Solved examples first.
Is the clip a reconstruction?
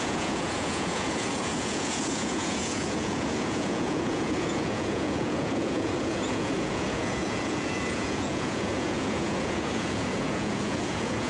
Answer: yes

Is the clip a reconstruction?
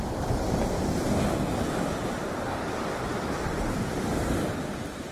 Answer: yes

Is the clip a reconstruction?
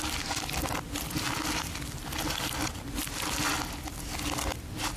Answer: no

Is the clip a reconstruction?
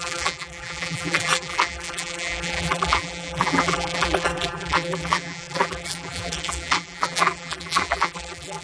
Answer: yes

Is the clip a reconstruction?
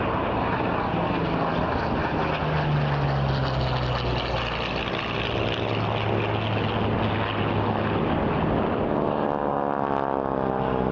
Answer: no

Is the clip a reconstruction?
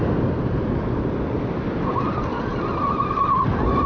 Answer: no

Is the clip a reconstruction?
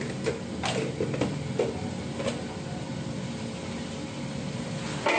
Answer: no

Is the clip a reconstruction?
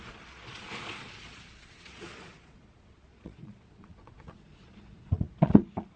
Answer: yes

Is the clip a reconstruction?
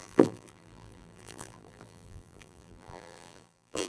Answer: yes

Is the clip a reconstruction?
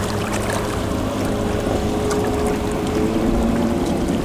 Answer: no